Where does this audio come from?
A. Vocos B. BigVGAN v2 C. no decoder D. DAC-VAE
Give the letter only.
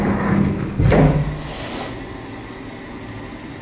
C